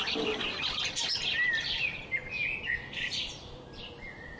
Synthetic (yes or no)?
no